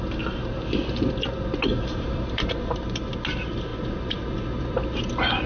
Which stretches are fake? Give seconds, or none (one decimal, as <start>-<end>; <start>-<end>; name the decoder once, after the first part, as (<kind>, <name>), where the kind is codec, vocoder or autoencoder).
1.7-3.1 (vocoder, BigVGAN v2)